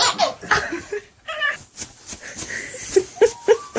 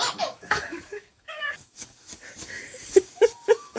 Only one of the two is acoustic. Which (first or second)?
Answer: first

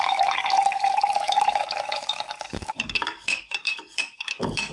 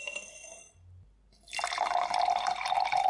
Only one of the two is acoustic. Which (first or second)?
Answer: second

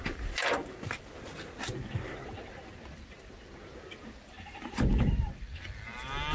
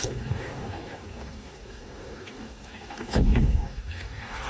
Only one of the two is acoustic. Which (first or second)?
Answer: first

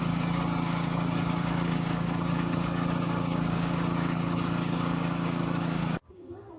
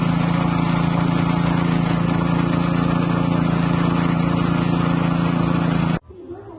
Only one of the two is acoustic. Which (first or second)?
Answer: second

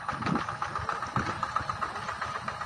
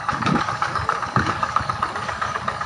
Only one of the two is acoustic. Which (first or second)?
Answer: first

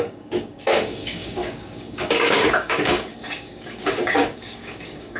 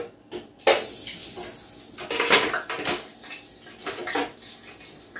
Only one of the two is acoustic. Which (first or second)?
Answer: second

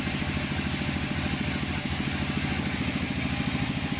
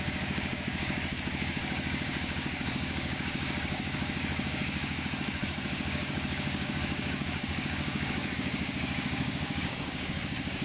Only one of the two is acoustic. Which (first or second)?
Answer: first